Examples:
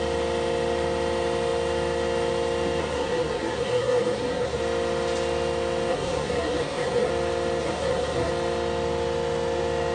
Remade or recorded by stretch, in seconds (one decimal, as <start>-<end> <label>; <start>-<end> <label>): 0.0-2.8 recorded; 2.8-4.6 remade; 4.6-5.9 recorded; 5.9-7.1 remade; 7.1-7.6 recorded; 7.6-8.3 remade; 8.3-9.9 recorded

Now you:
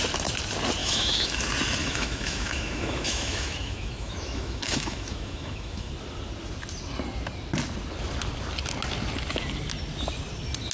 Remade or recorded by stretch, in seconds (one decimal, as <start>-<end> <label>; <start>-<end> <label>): 0.0-0.8 recorded; 0.8-1.4 remade; 1.4-1.8 recorded; 1.8-5.9 remade; 5.9-10.7 recorded

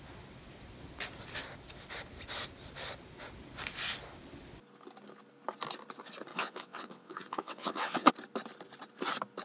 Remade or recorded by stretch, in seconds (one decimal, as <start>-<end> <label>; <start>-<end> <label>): 0.0-6.3 recorded; 6.3-8.1 remade; 8.1-9.4 recorded

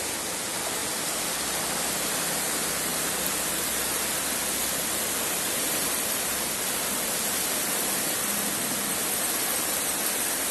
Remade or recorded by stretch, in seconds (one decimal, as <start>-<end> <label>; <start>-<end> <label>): 0.0-10.5 recorded

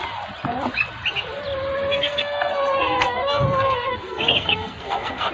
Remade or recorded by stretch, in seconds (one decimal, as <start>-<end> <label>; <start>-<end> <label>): 0.0-1.9 recorded; 1.9-5.3 remade

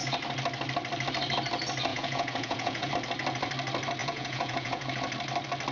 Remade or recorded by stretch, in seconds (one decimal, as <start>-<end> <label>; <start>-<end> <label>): 0.0-1.9 recorded; 1.9-2.9 remade; 2.9-4.0 recorded; 4.0-4.9 remade; 4.9-5.7 recorded

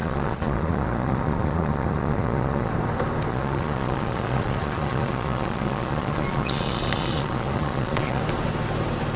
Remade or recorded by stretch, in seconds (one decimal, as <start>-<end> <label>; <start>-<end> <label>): 0.0-2.7 remade; 2.7-3.3 recorded; 3.3-8.2 remade; 8.2-9.2 recorded

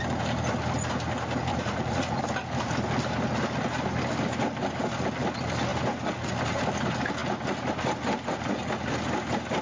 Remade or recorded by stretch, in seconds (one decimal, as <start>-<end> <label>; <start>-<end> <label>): 0.0-1.5 recorded; 1.5-2.2 remade; 2.2-9.6 recorded